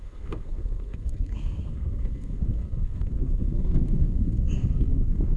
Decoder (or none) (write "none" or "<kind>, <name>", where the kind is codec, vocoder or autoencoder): codec, SNAC